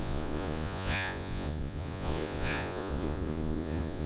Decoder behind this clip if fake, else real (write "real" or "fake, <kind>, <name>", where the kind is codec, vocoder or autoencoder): fake, vocoder, Vocos